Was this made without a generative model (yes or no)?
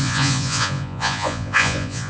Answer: no